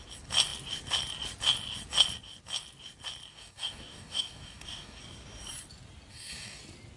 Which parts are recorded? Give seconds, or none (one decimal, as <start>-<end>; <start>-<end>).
0.0-3.3; 5.0-6.1; 6.6-7.0